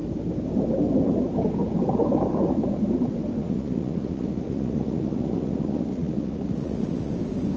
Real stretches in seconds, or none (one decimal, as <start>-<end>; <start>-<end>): 0.0-3.4; 7.1-7.6